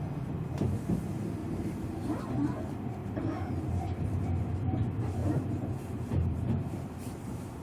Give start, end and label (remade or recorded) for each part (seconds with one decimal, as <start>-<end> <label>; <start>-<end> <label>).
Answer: 0.0-1.4 recorded; 1.4-2.2 remade; 2.2-3.0 recorded; 3.0-4.3 remade; 4.3-5.2 recorded; 5.2-7.6 remade